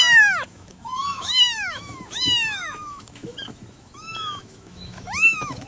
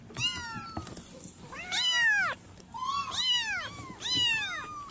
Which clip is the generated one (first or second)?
first